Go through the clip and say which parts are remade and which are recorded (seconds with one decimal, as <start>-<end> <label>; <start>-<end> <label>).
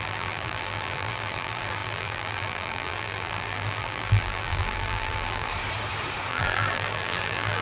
0.0-5.5 remade; 5.5-6.3 recorded; 6.3-7.6 remade